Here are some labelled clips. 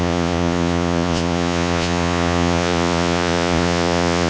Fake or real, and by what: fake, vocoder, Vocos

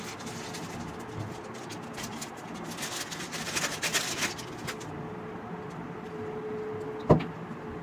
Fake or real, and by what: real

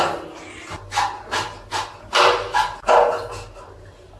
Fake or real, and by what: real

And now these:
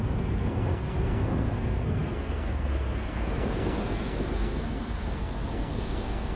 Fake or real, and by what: fake, codec, SNAC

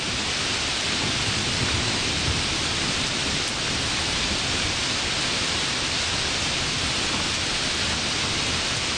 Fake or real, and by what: real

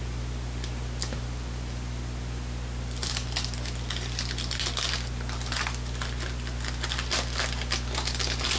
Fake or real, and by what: real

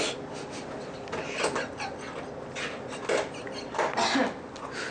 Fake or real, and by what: real